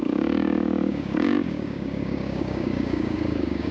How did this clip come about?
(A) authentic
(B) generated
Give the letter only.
B